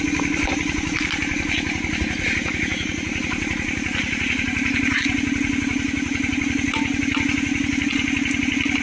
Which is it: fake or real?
real